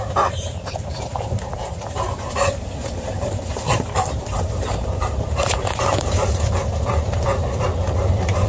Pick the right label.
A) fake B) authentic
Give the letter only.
A